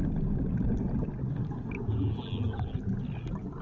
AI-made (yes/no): no